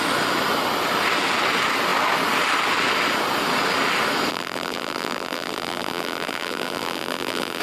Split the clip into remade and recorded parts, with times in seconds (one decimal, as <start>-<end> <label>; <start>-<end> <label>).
0.0-4.3 recorded; 4.3-7.6 remade